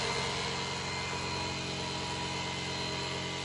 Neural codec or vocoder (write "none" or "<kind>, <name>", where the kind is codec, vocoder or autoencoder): none